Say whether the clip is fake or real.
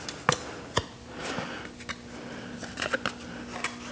real